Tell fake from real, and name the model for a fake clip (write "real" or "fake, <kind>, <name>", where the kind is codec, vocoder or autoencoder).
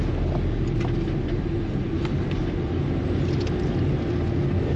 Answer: real